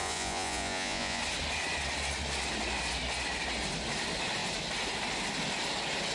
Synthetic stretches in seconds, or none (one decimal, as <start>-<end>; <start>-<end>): 0.0-1.2